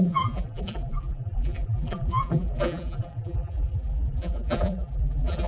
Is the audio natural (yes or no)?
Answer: no